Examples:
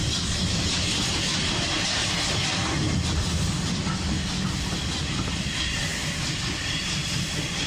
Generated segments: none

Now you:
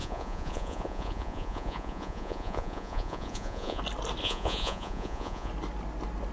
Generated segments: 0.0-3.8; 4.2-5.5

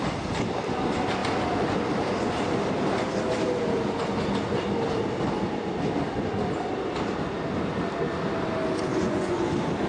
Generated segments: 8.9-9.5

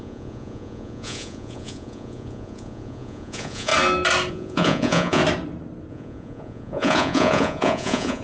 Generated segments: 0.0-3.7; 4.3-5.2; 5.9-8.2

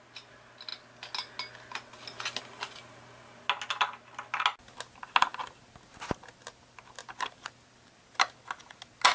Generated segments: none

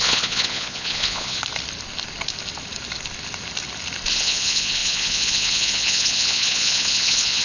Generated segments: 0.0-1.4; 4.1-7.4

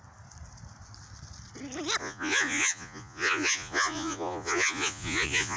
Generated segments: 2.0-5.6